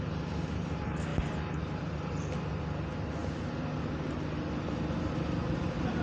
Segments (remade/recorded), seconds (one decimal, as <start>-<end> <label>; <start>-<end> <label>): 0.0-6.0 recorded